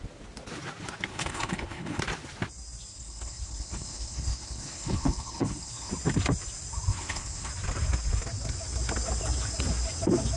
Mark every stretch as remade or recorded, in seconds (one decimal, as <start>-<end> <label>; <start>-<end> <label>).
0.0-1.1 recorded; 1.1-2.0 remade; 2.0-2.9 recorded; 2.9-5.9 remade; 5.9-6.9 recorded; 6.9-7.5 remade; 7.5-10.4 recorded